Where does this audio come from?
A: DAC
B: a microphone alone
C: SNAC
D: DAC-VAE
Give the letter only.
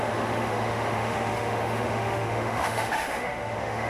D